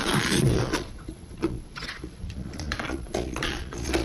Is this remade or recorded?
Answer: remade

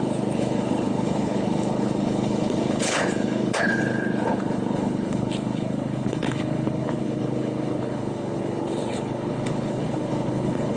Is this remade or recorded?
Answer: remade